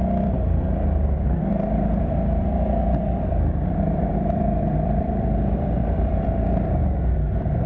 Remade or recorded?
remade